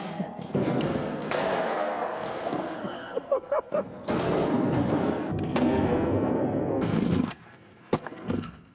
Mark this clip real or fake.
fake